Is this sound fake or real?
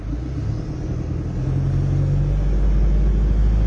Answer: real